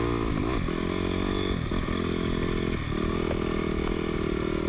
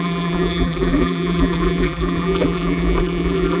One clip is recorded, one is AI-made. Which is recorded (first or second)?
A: first